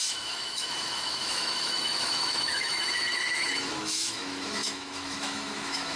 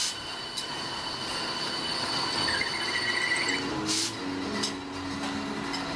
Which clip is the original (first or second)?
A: second